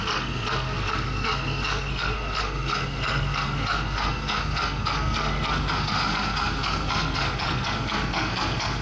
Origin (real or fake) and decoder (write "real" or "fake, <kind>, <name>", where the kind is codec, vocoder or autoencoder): fake, codec, SNAC